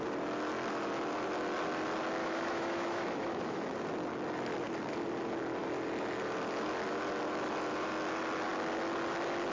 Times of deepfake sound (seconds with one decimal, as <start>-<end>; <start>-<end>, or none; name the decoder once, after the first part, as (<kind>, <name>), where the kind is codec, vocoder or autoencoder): 2.2-3.6 (autoencoder, DAC-VAE)